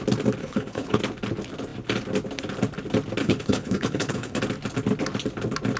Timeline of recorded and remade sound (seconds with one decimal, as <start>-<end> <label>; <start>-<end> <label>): 0.0-0.4 recorded; 0.4-1.0 remade; 1.0-3.2 recorded; 3.2-4.4 remade; 4.4-5.8 recorded